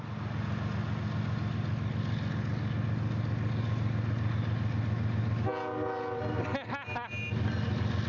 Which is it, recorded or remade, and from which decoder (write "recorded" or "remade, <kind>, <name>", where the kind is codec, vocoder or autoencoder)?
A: recorded